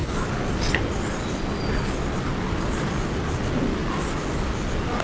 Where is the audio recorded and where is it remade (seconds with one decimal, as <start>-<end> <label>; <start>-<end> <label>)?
0.0-5.0 recorded